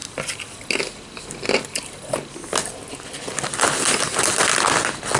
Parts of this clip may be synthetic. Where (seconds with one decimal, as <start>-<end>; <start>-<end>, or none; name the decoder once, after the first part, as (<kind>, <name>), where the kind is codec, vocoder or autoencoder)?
none